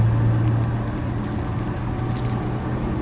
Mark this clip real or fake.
real